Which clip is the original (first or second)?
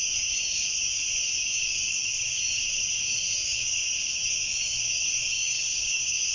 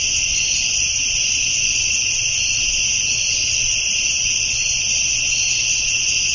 second